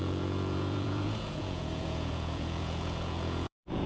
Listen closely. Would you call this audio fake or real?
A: fake